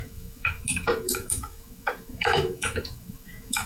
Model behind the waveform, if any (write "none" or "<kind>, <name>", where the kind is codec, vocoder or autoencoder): autoencoder, DAC-VAE